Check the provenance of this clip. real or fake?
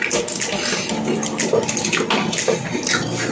real